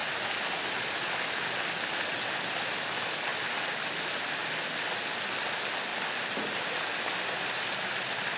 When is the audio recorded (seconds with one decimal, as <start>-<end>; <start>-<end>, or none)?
0.0-8.4